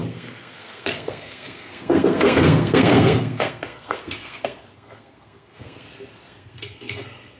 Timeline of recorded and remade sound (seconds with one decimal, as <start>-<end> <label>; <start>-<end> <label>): 0.0-7.4 remade